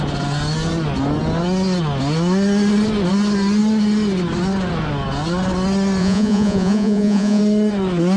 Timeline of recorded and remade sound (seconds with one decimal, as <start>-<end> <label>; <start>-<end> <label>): 0.0-6.0 recorded; 6.0-7.4 remade; 7.4-8.2 recorded